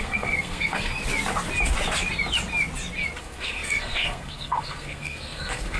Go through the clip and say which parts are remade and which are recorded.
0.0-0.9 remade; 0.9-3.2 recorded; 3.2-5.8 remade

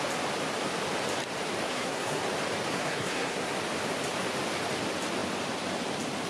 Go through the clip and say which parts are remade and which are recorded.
0.0-1.7 recorded; 1.7-2.2 remade; 2.2-2.7 recorded; 2.7-3.6 remade; 3.6-6.3 recorded

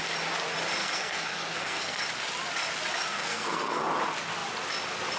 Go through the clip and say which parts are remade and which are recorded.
0.0-0.8 recorded; 0.8-2.0 remade; 2.0-3.1 recorded; 3.1-3.8 remade; 3.8-5.2 recorded

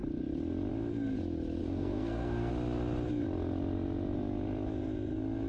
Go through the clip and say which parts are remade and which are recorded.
0.0-1.6 recorded; 1.6-2.5 remade; 2.5-5.5 recorded

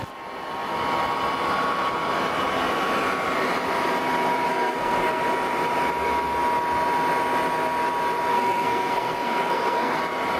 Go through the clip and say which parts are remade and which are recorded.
0.0-4.5 recorded; 4.5-5.2 remade; 5.2-8.3 recorded; 8.3-10.0 remade; 10.0-10.4 recorded

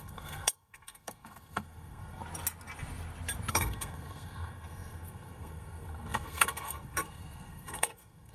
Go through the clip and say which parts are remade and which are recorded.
0.0-2.2 remade; 2.2-3.5 recorded; 3.5-8.3 remade

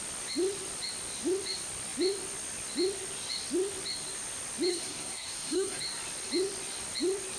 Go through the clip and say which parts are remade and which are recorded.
0.0-4.7 recorded; 4.7-5.8 remade; 5.8-7.4 recorded

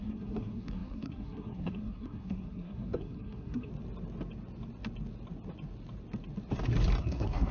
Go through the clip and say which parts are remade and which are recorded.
0.0-3.7 remade; 3.7-7.0 recorded; 7.0-7.5 remade